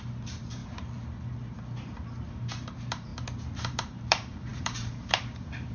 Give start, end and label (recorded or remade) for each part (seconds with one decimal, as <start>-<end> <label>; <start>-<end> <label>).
0.0-0.6 remade; 0.6-2.3 recorded; 2.3-3.1 remade; 3.1-3.6 recorded; 3.6-5.7 remade